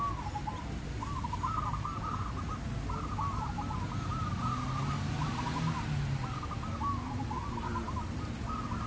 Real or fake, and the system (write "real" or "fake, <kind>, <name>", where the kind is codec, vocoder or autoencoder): real